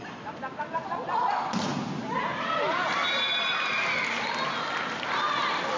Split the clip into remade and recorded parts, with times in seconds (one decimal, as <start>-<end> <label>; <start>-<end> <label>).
0.0-5.8 recorded